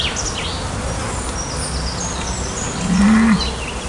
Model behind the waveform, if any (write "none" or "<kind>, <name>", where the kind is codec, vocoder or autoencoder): none